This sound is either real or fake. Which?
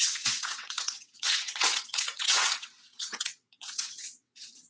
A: fake